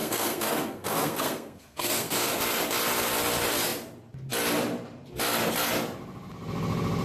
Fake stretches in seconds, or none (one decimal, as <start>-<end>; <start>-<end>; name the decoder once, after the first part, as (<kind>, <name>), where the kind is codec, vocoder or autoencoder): 0.0-2.4 (codec, SNAC)